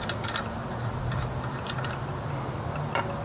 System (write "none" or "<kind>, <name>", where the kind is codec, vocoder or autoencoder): vocoder, BigVGAN v2